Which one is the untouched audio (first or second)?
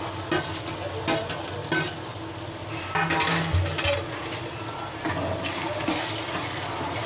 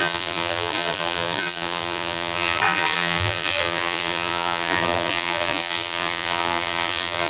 first